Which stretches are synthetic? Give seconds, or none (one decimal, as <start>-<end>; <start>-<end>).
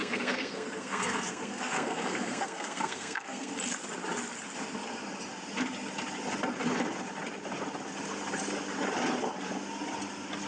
0.0-3.5